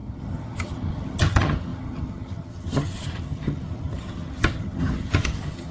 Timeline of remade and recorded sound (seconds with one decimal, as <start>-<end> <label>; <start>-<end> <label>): 0.0-5.7 remade

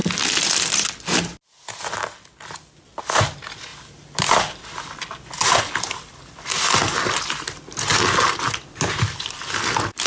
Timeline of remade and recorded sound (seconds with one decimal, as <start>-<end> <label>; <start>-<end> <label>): 0.0-10.1 recorded

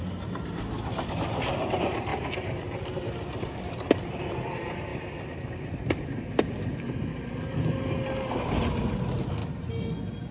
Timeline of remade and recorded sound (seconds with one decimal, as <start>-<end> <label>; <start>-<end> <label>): 0.0-10.3 recorded

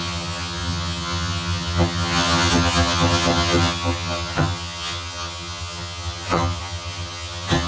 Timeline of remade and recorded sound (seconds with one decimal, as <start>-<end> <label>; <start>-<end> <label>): 0.0-7.7 remade

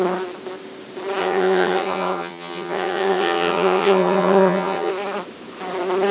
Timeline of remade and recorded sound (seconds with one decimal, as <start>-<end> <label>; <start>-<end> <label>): 0.0-1.2 recorded; 1.2-4.9 remade; 4.9-6.1 recorded

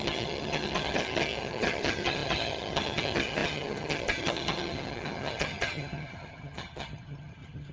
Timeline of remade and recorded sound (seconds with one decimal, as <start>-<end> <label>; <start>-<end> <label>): 0.0-7.7 remade

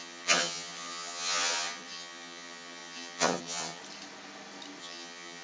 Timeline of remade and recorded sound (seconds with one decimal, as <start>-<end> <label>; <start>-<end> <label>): 0.0-3.8 remade; 3.8-4.8 recorded; 4.8-5.4 remade

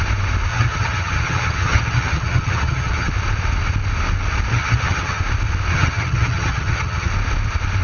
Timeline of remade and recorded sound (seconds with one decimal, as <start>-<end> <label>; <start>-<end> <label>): 0.0-0.5 recorded; 0.5-3.1 remade; 3.1-4.5 recorded; 4.5-5.2 remade; 5.2-5.7 recorded; 5.7-7.1 remade; 7.1-7.8 recorded